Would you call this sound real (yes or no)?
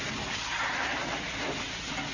no